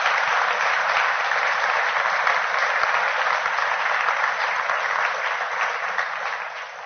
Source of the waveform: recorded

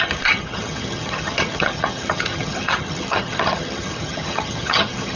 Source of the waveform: remade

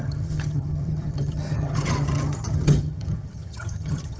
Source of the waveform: remade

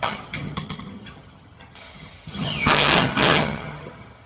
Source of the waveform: remade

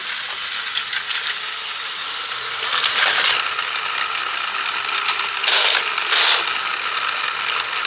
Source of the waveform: recorded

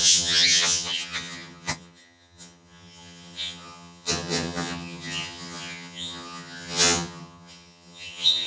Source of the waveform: remade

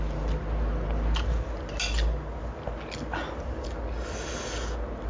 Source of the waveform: recorded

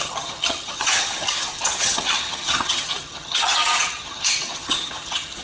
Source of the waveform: remade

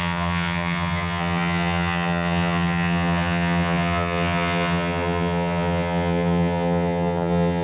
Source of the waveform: remade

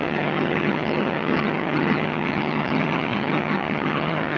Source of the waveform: remade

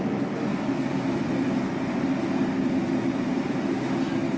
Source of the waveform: recorded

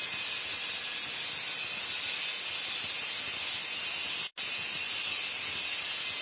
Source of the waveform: recorded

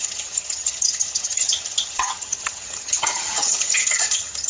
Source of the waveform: remade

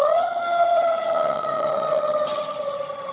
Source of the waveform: remade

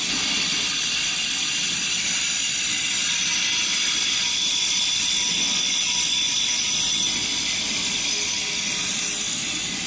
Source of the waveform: recorded